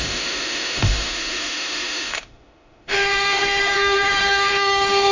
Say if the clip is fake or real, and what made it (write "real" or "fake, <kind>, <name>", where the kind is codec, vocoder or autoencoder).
fake, autoencoder, DAC-VAE